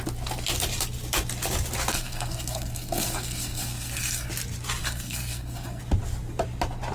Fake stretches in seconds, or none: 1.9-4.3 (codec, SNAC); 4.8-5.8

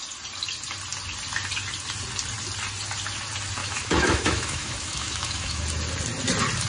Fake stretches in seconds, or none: 3.6-5.6 (autoencoder, DAC-VAE)